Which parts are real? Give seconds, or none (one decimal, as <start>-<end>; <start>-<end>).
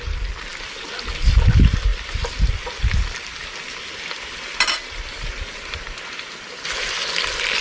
0.0-7.6